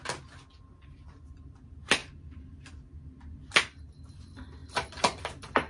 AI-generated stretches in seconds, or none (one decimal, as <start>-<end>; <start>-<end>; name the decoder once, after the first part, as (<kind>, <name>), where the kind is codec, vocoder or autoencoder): none